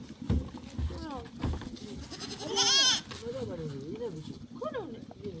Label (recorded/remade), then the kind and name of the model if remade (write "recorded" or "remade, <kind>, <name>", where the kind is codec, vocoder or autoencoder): recorded